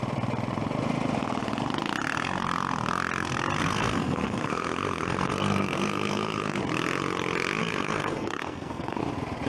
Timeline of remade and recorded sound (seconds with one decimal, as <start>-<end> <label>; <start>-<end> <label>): 0.0-3.6 recorded; 3.6-6.6 remade; 6.6-7.6 recorded; 7.6-9.0 remade; 9.0-9.5 recorded